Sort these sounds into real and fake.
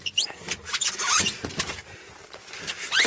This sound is real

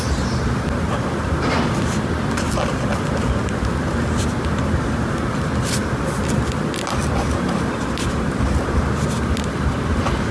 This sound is real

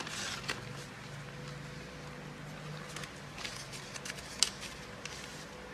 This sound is real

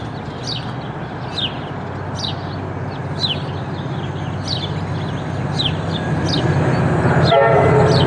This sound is real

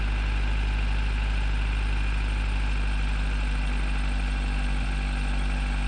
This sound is real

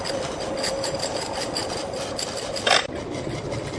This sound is fake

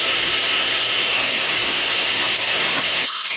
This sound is fake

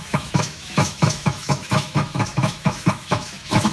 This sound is fake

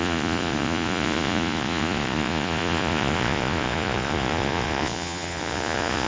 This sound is fake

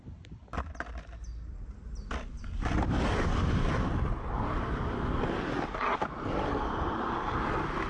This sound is real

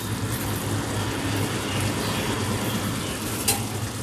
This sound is real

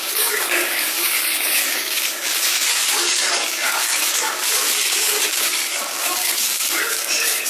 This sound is fake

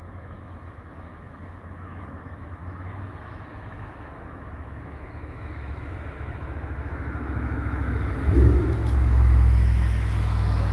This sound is fake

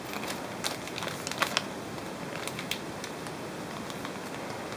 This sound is real